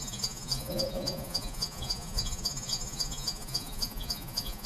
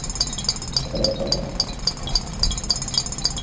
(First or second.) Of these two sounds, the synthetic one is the first